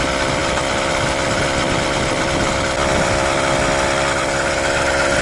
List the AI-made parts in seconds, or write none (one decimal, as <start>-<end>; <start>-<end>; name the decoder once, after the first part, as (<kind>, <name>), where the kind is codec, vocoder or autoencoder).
none